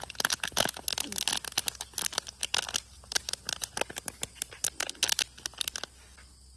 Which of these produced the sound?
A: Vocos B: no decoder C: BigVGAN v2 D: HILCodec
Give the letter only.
B